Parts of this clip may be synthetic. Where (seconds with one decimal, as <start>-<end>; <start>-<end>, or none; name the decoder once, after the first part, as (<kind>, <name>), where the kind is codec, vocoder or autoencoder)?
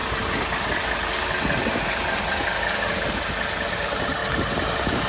none